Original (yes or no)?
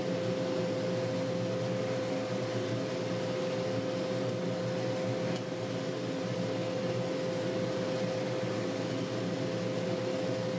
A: yes